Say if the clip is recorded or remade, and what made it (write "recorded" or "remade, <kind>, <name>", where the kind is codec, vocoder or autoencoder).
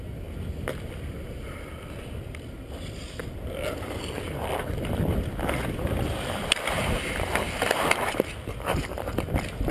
remade, vocoder, BigVGAN v2